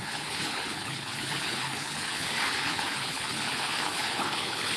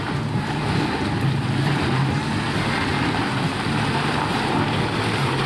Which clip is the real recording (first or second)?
second